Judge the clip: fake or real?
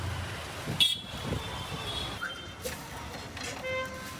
real